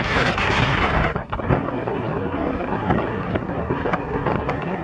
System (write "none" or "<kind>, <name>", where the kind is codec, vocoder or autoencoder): codec, SNAC